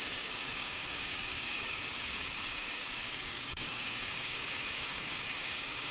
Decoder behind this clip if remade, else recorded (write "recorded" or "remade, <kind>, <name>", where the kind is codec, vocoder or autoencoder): remade, codec, DAC